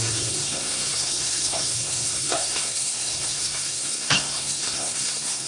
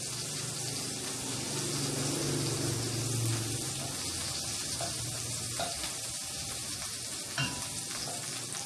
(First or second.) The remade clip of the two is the first